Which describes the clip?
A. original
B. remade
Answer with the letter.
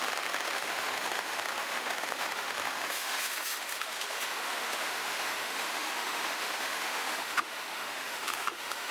B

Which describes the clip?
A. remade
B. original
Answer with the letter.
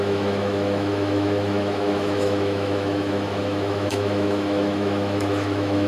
A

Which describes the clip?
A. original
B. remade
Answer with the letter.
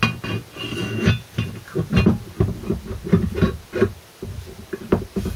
A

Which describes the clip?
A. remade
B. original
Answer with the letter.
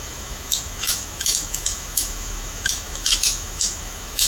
A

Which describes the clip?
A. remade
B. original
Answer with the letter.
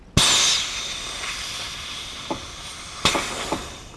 B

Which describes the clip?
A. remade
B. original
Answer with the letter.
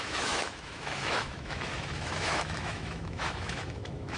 A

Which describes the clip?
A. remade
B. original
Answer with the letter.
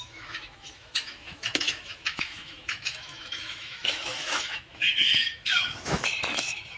A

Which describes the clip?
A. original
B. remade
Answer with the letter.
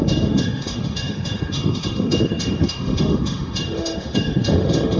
B